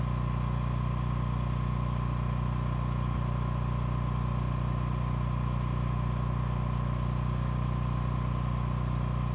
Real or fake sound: real